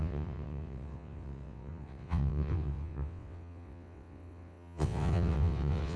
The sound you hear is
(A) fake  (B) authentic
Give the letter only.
A